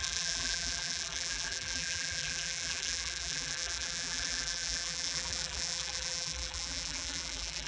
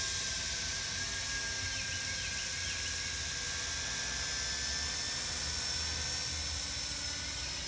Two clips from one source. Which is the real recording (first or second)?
second